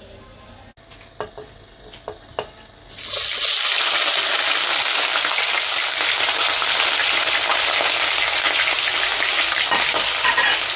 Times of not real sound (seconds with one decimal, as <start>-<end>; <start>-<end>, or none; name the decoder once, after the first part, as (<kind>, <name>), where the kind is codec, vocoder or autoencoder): none